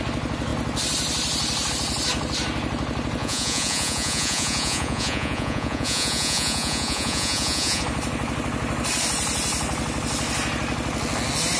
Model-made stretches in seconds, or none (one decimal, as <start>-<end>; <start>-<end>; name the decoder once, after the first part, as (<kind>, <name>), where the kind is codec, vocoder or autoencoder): 3.2-7.8 (vocoder, Vocos)